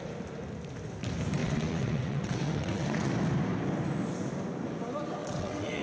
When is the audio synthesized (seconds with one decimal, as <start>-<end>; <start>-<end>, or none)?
1.4-3.1; 5.2-5.8

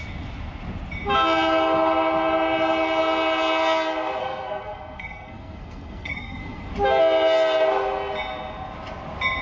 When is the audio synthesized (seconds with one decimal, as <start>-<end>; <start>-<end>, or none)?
4.2-6.7

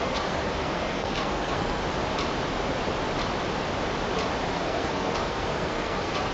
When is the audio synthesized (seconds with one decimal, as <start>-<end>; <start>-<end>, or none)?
0.0-1.8; 4.5-6.3

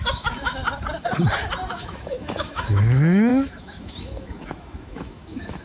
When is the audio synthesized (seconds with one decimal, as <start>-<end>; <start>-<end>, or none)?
0.0-0.6; 1.7-5.6

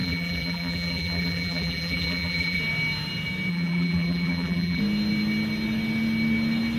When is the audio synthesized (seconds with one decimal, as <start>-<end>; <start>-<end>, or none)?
0.0-2.6; 3.5-4.8

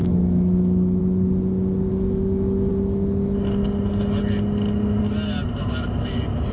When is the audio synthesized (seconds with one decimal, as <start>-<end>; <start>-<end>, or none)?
0.0-1.0; 1.9-2.7

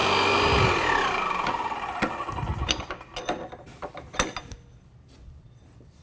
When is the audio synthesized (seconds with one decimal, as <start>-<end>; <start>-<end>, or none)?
none